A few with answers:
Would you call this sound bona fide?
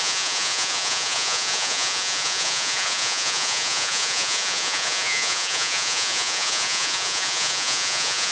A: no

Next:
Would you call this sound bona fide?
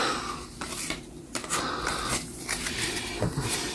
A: yes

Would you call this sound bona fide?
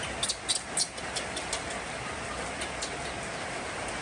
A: yes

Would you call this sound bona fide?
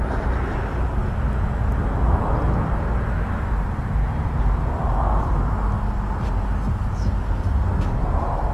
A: yes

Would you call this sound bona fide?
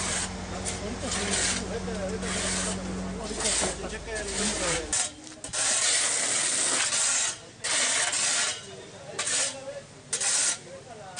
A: yes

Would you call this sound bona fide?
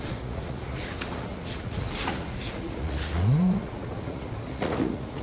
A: no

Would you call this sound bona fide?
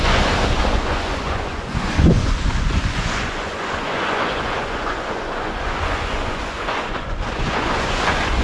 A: no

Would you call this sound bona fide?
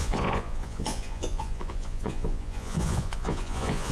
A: no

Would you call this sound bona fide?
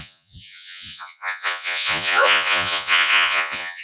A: no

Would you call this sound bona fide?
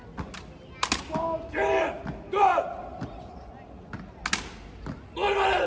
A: yes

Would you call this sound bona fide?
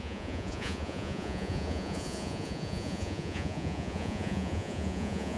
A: no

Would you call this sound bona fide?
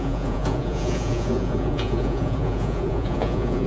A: no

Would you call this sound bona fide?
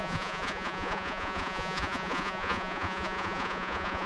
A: no